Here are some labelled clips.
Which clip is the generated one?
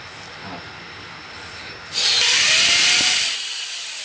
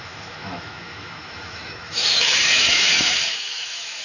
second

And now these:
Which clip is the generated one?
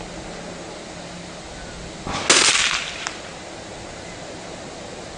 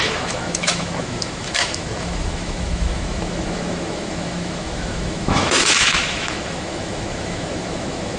second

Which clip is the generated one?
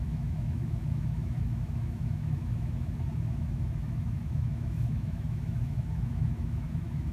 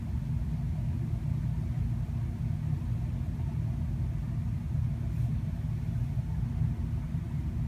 first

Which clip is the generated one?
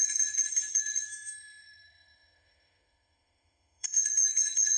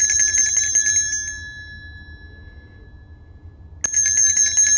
first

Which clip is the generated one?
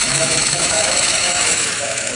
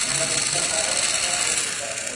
first